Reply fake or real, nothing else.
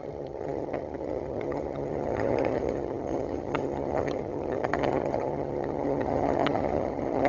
fake